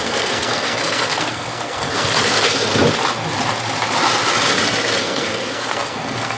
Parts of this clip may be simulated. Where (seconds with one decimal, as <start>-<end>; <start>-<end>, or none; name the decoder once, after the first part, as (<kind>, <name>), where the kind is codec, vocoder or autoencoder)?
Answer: 0.0-2.7 (codec, SNAC); 5.0-6.4